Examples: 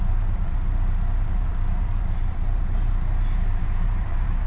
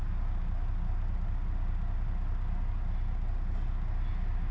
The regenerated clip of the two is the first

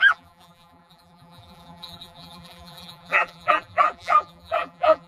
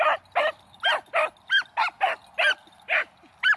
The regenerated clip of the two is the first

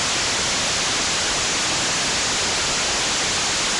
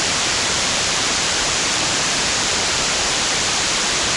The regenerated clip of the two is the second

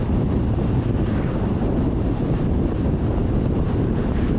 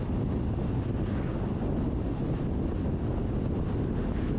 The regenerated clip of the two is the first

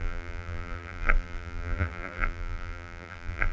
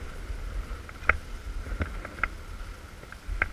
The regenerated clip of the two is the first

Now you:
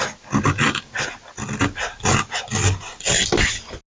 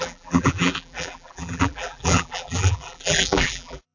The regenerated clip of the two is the second